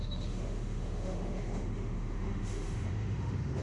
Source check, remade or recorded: remade